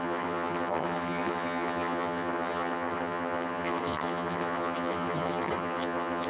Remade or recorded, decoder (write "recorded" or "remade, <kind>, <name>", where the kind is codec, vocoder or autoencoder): remade, vocoder, HiFi-GAN